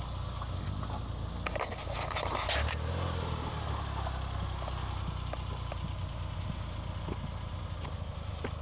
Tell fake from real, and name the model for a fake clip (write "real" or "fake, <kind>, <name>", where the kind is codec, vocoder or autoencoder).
real